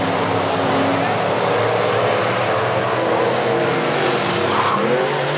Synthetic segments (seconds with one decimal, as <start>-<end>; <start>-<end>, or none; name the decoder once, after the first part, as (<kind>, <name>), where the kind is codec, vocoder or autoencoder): none